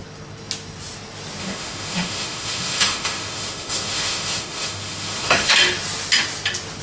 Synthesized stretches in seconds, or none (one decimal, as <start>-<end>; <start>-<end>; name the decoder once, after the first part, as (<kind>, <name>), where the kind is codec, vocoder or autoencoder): 1.4-5.5 (autoencoder, DAC-VAE)